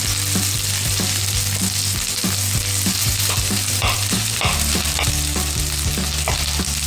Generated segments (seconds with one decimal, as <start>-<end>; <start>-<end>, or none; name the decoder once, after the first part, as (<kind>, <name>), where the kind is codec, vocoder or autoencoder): 3.0-5.1 (vocoder, BigVGAN v2)